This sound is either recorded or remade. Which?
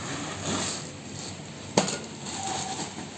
recorded